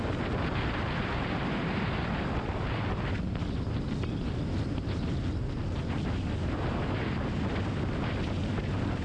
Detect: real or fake real